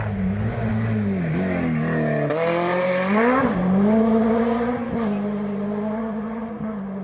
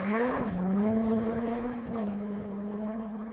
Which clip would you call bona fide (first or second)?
first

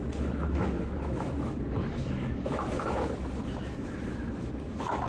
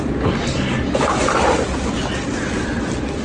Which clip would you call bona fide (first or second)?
second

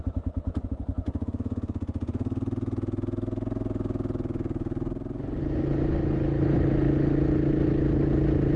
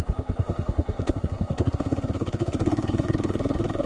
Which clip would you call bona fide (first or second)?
first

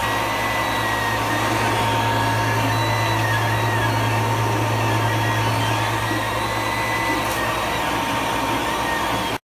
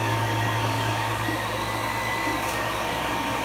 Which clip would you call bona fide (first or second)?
first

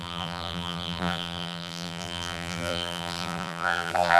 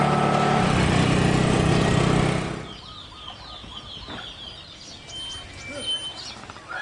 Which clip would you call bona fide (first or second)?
second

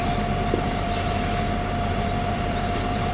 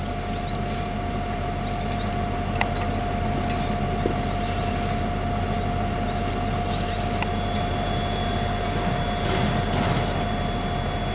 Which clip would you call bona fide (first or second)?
second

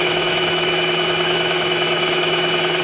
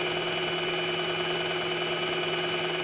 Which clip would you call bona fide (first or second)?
second